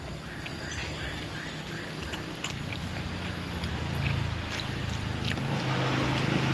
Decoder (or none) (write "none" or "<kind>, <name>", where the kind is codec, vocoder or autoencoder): none